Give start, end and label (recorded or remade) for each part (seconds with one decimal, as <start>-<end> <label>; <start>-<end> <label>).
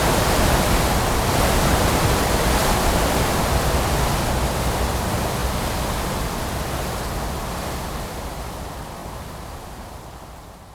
0.0-9.0 recorded; 9.0-9.9 remade; 9.9-10.7 recorded